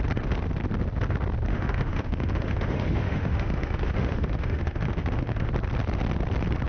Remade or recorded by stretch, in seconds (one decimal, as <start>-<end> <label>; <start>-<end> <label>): 0.0-1.5 recorded; 1.5-5.5 remade; 5.5-6.7 recorded